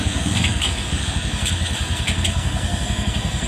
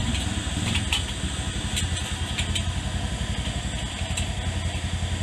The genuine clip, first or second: second